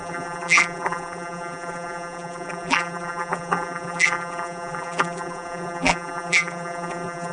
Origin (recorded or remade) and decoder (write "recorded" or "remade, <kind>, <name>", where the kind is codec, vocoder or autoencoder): remade, vocoder, BigVGAN v2